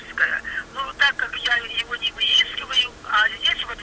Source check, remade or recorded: remade